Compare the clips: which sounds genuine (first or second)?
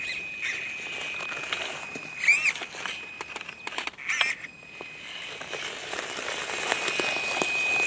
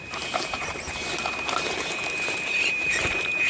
first